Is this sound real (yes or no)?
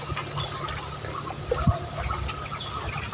yes